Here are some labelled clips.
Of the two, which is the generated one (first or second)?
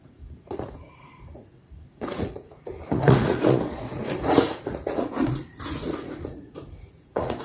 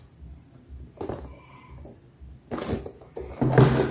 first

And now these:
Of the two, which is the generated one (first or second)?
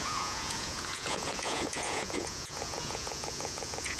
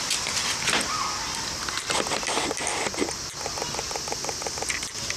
first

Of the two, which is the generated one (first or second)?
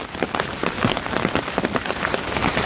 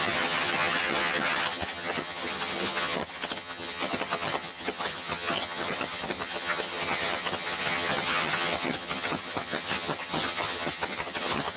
second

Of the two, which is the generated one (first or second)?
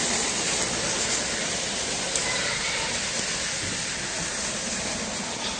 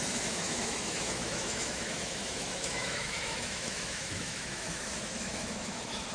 second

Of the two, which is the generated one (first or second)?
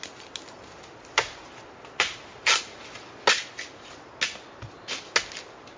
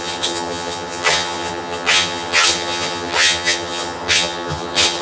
second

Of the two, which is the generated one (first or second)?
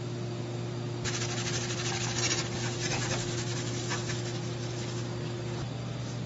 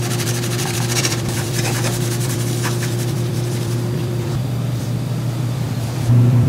second